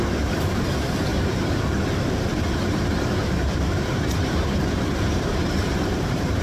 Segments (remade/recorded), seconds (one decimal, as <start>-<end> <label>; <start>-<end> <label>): 0.0-1.1 recorded; 1.1-1.6 remade; 1.6-2.3 recorded; 2.3-6.4 remade